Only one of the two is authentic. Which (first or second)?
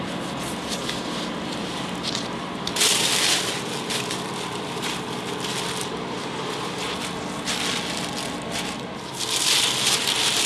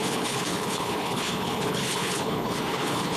first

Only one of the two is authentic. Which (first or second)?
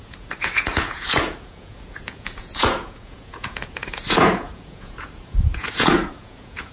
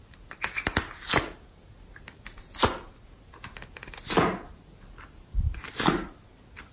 second